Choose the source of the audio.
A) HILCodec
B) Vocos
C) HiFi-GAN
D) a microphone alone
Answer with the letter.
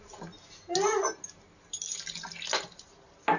D